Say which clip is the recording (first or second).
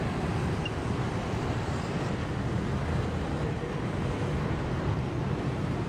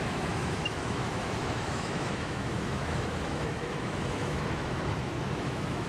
first